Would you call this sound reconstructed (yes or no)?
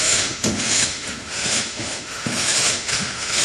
yes